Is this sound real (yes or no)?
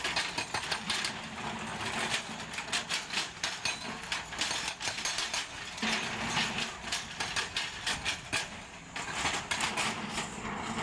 yes